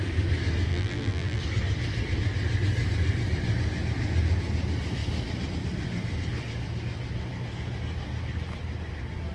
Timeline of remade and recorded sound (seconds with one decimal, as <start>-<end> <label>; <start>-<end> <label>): 0.0-0.7 recorded; 0.7-1.4 remade; 1.4-9.3 recorded